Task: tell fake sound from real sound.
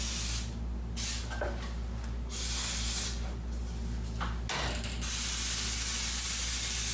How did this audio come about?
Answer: real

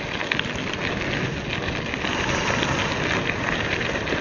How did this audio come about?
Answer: real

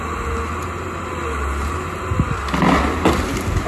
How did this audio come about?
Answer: real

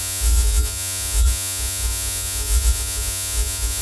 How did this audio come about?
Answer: fake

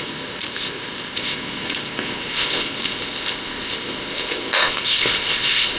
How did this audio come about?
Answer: fake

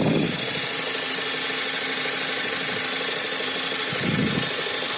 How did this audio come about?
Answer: fake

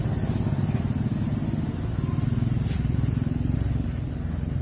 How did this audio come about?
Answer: real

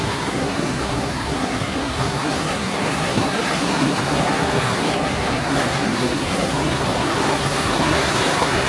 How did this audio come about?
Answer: fake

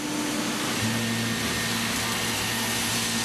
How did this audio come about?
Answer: real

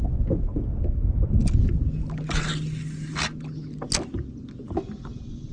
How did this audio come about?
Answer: real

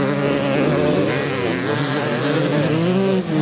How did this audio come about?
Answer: real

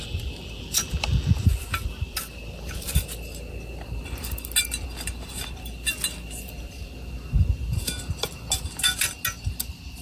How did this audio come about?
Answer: real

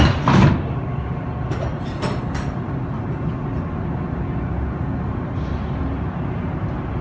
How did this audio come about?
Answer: real